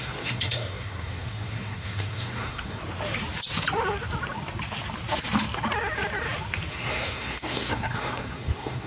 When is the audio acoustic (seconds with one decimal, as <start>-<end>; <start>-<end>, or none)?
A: 2.8-6.7